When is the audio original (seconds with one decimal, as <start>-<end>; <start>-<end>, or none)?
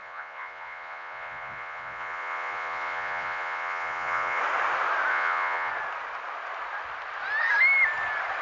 4.4-5.1; 5.7-8.4